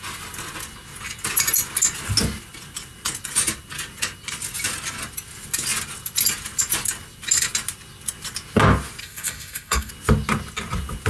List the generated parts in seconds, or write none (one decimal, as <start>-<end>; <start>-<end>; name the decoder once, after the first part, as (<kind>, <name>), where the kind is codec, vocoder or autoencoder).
9.0-9.9 (codec, SNAC)